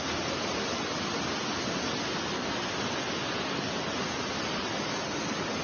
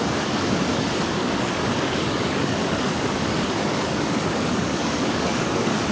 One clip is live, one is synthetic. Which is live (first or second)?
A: first